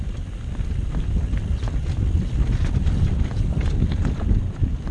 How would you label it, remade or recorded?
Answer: recorded